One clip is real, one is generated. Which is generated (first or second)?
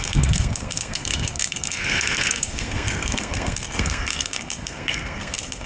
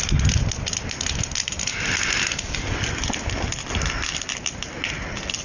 first